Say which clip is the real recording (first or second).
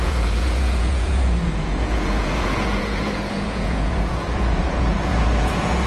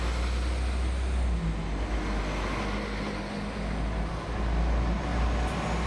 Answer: second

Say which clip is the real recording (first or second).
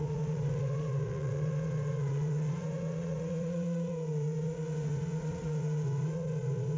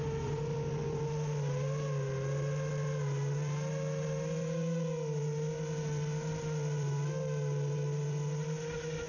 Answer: second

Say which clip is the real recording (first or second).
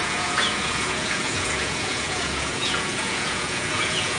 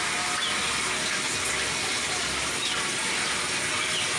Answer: second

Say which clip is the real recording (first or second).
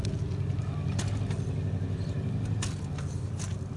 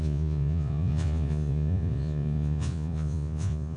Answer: first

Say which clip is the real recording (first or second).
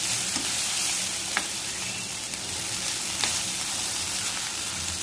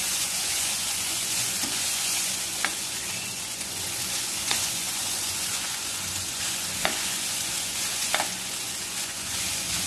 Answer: first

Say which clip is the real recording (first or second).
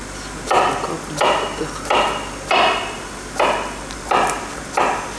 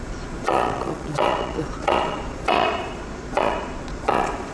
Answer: first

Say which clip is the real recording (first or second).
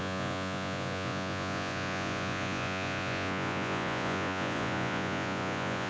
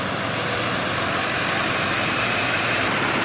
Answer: second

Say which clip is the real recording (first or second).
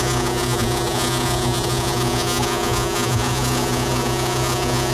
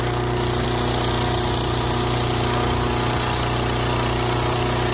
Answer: second